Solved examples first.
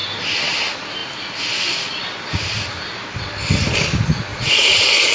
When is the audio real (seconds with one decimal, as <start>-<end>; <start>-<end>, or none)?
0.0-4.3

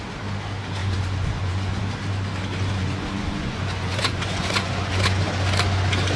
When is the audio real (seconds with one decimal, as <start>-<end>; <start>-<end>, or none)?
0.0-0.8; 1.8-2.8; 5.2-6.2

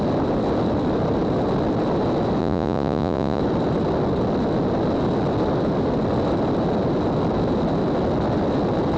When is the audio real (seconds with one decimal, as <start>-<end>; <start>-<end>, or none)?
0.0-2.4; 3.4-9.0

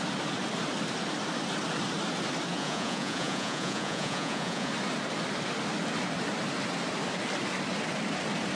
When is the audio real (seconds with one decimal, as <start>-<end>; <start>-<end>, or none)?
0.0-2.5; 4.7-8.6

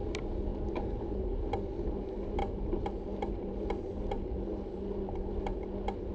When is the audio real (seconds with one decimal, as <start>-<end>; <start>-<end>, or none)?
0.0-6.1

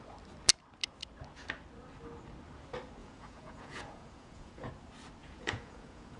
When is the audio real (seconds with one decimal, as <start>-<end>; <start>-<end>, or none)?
0.0-3.0; 4.7-5.2

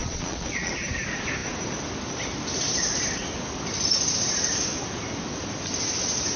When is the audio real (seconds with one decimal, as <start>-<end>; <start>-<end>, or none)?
0.7-6.4

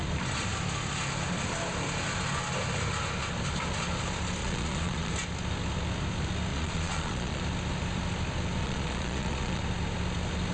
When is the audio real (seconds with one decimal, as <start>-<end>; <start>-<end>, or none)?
0.0-4.4; 5.1-6.5; 7.4-8.6; 9.6-10.5